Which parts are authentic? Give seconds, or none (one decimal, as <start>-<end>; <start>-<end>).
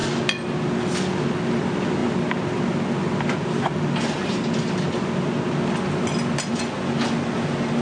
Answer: 0.0-7.8